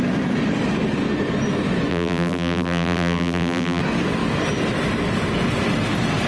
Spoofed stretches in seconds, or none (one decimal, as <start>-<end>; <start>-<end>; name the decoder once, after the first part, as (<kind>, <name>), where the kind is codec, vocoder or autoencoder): 1.9-3.8 (vocoder, BigVGAN v2)